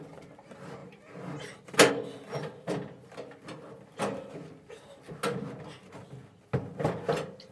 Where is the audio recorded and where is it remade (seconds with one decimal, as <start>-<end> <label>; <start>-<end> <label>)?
0.0-7.5 recorded